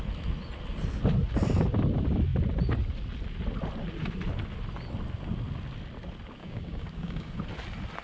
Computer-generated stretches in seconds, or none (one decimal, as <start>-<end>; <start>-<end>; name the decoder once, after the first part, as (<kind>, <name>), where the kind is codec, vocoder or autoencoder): 6.4-7.4 (codec, DAC)